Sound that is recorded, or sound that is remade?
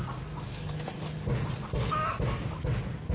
recorded